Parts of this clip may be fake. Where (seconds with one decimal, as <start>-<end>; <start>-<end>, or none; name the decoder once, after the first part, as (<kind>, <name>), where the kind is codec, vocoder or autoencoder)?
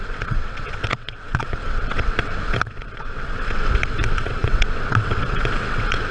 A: 0.0-6.1 (vocoder, WaveNeXt)